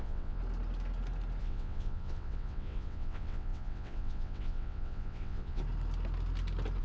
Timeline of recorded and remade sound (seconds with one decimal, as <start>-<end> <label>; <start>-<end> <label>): 0.0-0.4 remade; 0.4-1.4 recorded; 1.4-5.6 remade; 5.6-6.8 recorded